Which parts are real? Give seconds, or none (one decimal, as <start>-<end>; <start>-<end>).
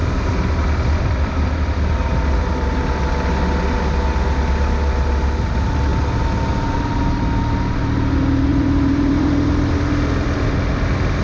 2.4-8.5; 10.5-11.2